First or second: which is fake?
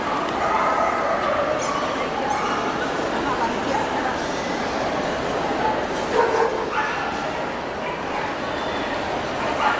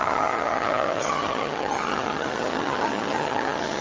second